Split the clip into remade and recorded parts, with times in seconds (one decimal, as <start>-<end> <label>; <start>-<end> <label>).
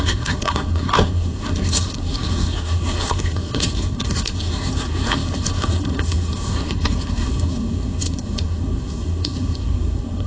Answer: 0.0-10.3 remade